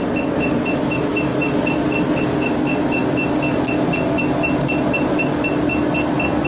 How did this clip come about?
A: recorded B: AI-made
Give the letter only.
A